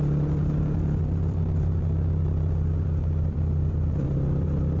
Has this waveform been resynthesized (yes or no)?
no